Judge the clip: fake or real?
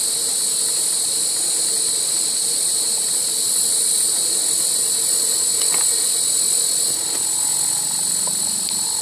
real